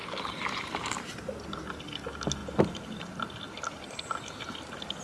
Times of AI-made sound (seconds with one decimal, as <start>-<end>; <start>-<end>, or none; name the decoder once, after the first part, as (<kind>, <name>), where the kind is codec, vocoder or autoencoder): 0.0-1.2 (vocoder, BigVGAN v2)